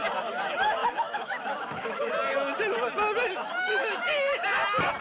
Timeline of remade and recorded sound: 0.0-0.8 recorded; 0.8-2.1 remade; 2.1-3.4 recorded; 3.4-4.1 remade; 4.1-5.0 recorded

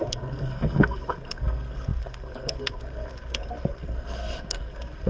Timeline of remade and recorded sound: 0.0-5.1 remade

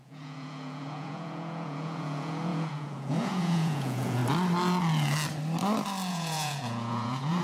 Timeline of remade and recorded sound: 0.0-4.2 remade; 4.2-6.1 recorded; 6.1-7.4 remade

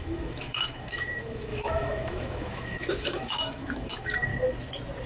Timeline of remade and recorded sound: 0.0-4.3 remade; 4.3-5.1 recorded

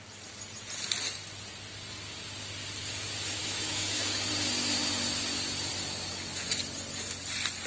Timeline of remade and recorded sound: 0.0-3.4 recorded; 3.4-4.3 remade; 4.3-7.7 recorded

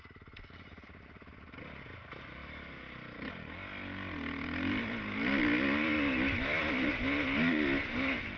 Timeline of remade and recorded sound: 0.0-8.4 recorded

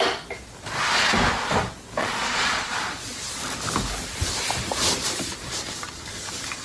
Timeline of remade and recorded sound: 0.0-2.0 recorded; 2.0-2.7 remade; 2.7-6.6 recorded

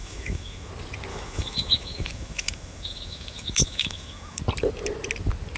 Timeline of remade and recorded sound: 0.0-0.7 remade; 0.7-1.1 recorded; 1.1-4.4 remade; 4.4-5.6 recorded